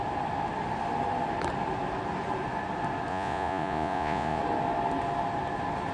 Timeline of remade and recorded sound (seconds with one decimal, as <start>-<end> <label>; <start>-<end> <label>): 0.0-3.1 recorded; 3.1-4.4 remade; 4.4-5.9 recorded

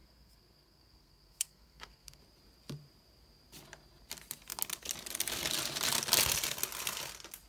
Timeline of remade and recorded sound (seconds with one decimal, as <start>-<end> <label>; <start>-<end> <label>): 0.0-2.2 remade; 2.2-7.5 recorded

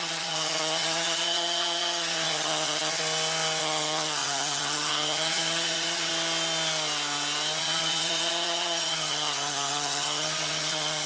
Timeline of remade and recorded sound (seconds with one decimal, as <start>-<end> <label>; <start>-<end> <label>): 0.0-3.0 remade; 3.0-3.6 recorded; 3.6-6.1 remade; 6.1-7.6 recorded; 7.6-11.1 remade

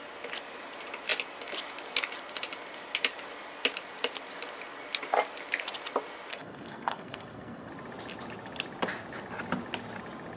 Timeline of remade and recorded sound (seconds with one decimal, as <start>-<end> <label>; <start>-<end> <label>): 0.0-6.3 recorded; 6.3-7.7 remade; 7.7-10.4 recorded